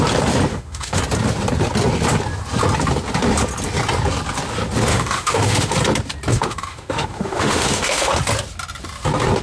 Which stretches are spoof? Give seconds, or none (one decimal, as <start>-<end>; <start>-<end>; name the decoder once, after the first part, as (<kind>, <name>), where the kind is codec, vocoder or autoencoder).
0.5-1.0 (autoencoder, DAC-VAE); 4.9-5.7; 6.3-8.2